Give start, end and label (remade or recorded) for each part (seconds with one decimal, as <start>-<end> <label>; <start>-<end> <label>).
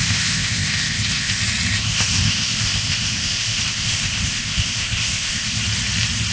0.0-1.4 remade; 1.4-1.8 recorded; 1.8-5.6 remade; 5.6-6.3 recorded